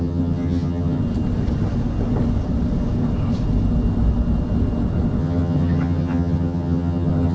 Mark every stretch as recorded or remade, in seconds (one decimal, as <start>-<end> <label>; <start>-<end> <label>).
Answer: 0.0-1.0 remade; 1.0-5.2 recorded; 5.2-7.3 remade